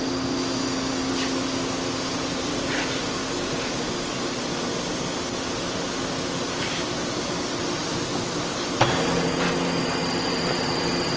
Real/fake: real